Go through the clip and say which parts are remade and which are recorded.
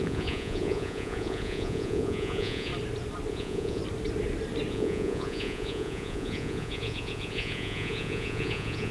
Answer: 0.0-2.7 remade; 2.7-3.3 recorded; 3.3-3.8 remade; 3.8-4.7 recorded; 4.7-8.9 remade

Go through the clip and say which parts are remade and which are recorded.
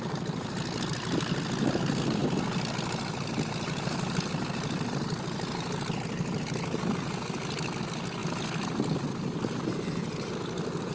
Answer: 0.0-10.9 recorded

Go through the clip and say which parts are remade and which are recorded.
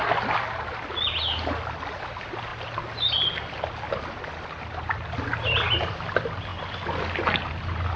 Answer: 0.0-8.0 recorded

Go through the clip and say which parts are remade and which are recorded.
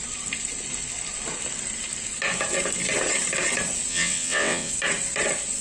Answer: 0.0-3.9 recorded; 3.9-4.7 remade; 4.7-5.6 recorded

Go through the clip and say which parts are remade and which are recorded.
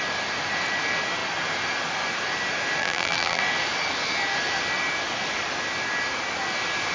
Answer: 0.0-2.8 recorded; 2.8-3.4 remade; 3.4-6.9 recorded